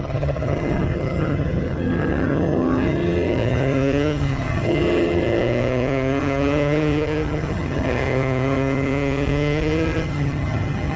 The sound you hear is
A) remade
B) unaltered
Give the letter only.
A